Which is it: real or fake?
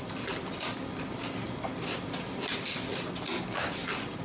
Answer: real